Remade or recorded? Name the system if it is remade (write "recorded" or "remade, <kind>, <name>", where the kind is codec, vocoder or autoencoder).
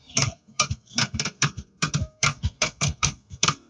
remade, codec, SNAC